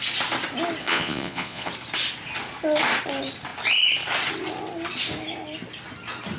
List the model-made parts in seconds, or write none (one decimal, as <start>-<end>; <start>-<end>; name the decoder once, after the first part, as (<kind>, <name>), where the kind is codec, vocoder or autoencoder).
0.8-1.7 (vocoder, Vocos)